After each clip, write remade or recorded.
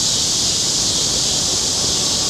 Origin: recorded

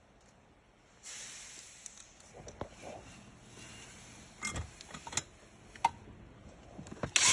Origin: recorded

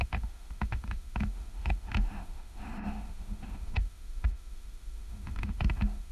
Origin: remade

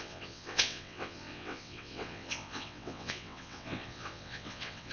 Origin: remade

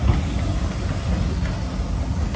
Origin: recorded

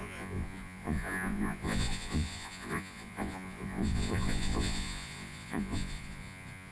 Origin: remade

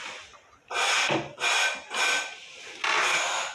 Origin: recorded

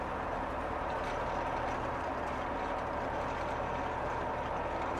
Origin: recorded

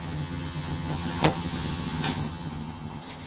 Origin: remade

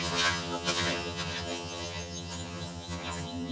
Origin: remade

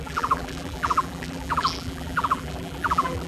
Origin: remade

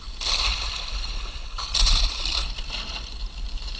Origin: remade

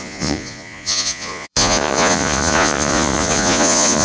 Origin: remade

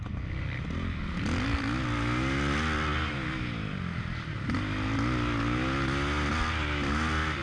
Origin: recorded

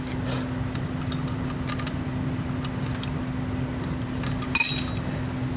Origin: recorded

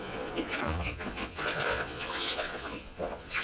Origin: remade